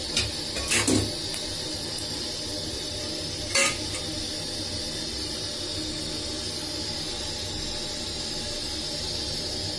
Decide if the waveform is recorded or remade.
recorded